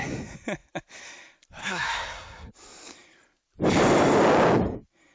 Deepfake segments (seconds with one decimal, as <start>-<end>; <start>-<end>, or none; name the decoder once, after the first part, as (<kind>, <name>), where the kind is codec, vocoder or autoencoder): 1.6-2.5 (codec, SNAC)